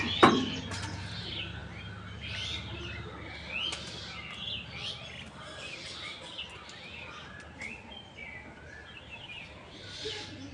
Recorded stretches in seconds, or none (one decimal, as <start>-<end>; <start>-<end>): 0.0-10.5